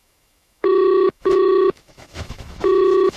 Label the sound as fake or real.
fake